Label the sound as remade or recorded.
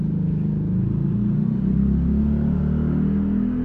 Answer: recorded